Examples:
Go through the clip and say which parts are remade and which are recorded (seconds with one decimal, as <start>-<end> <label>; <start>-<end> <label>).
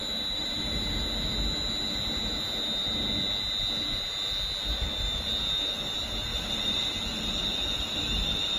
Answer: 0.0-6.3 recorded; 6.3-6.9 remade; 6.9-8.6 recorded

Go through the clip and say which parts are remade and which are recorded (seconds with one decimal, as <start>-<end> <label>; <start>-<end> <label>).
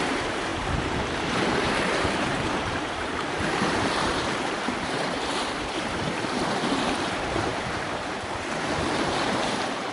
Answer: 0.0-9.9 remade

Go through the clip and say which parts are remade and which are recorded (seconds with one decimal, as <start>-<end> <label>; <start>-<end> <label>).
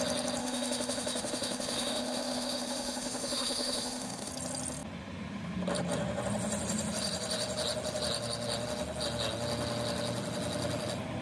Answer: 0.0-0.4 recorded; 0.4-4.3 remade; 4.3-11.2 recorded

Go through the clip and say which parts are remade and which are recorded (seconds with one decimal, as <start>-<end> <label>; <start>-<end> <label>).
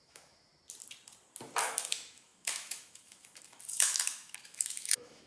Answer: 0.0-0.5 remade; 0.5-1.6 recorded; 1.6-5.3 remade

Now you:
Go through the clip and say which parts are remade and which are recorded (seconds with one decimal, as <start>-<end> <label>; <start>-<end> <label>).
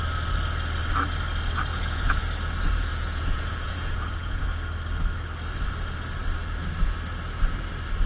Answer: 0.0-1.7 recorded; 1.7-2.2 remade; 2.2-2.9 recorded; 2.9-4.4 remade; 4.4-8.1 recorded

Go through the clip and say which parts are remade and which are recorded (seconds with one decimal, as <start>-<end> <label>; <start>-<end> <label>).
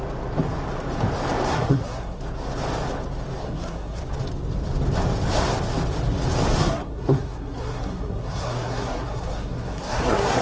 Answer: 0.0-1.5 recorded; 1.5-2.2 remade; 2.2-3.4 recorded; 3.4-4.0 remade; 4.0-6.6 recorded; 6.6-10.4 remade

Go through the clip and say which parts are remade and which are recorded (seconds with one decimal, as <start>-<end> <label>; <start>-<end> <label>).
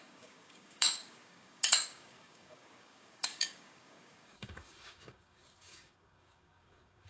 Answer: 0.0-7.1 remade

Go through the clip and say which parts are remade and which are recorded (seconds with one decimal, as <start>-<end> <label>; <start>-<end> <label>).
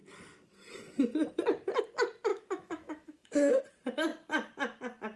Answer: 0.0-2.3 recorded; 2.3-3.6 remade; 3.6-5.2 recorded